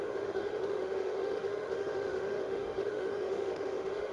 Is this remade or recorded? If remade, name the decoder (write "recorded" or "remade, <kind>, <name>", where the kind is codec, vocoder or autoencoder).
remade, autoencoder, DAC-VAE